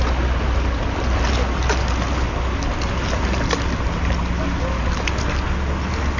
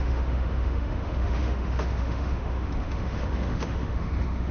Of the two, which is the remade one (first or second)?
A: second